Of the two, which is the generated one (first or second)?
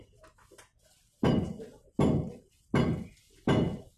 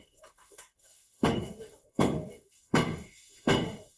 second